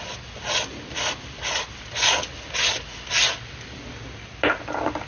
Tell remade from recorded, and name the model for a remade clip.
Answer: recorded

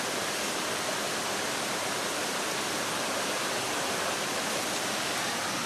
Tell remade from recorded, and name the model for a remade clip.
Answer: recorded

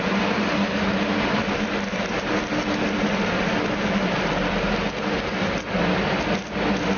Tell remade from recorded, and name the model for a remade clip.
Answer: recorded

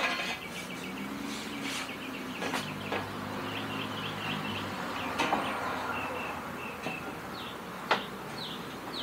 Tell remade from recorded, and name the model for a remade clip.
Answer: recorded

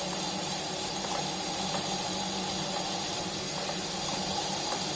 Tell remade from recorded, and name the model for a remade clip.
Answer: recorded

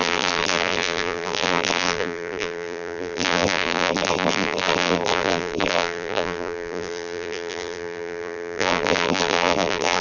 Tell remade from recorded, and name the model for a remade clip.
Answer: remade, vocoder, BigVGAN v2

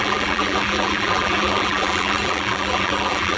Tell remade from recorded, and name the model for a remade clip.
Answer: remade, vocoder, BigVGAN v2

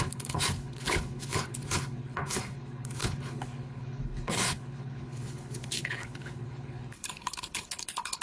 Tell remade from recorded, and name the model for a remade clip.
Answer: remade, codec, HILCodec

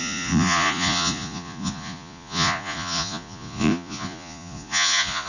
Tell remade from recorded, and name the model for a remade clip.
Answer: remade, vocoder, Vocos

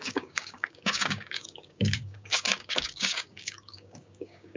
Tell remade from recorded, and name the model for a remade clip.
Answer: remade, codec, DAC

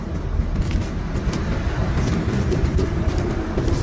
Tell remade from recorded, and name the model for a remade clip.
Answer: recorded